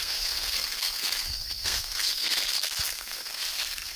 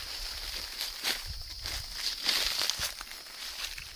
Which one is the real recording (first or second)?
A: second